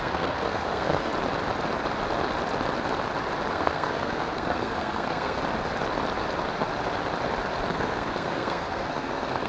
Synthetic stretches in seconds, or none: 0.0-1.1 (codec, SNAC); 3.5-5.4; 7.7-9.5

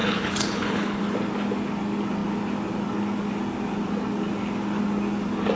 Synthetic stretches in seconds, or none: 0.0-1.0 (codec, HILCodec)

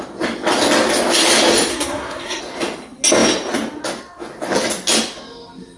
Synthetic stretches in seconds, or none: 1.7-2.4 (codec, SNAC)

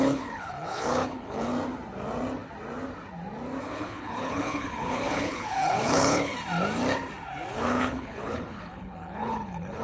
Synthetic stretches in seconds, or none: 0.0-1.5 (codec, HILCodec); 3.6-6.3; 7.5-9.8